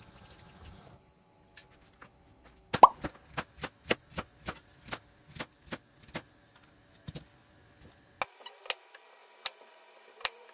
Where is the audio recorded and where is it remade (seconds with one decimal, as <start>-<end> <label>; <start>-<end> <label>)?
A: 0.0-9.2 recorded; 9.2-10.5 remade